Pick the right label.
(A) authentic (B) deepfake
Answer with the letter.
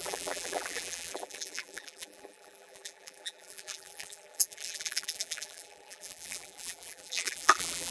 B